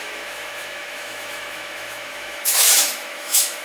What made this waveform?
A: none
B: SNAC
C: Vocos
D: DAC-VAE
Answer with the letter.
D